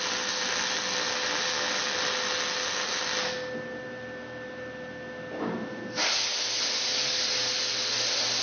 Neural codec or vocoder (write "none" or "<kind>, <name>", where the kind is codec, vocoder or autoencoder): none